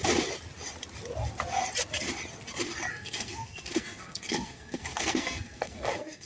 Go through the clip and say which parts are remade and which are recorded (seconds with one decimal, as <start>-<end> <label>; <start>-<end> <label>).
0.0-2.9 recorded; 2.9-6.3 remade